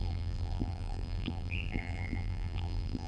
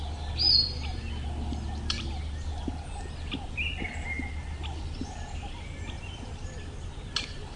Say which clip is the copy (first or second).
first